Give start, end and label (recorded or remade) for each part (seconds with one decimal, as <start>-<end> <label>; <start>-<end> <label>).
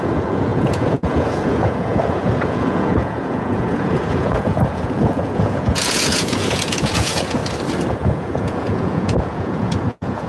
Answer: 0.0-7.4 remade; 7.4-7.9 recorded; 7.9-10.3 remade